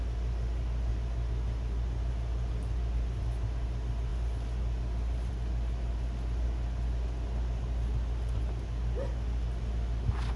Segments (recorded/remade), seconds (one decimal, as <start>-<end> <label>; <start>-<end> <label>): 0.0-10.4 recorded